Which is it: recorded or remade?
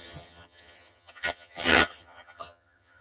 remade